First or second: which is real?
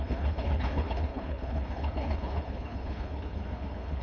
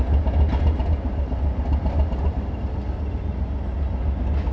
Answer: second